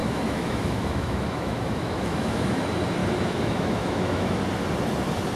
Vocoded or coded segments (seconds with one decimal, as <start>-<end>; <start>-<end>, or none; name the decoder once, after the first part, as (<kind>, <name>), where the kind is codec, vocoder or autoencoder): 0.0-2.6 (autoencoder, DAC-VAE); 3.0-4.4